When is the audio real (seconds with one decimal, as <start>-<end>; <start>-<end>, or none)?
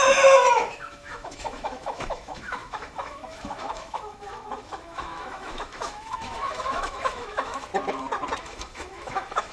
7.7-8.4